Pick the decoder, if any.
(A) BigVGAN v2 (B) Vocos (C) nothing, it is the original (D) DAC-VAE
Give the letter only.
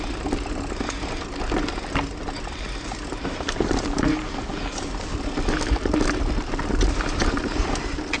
C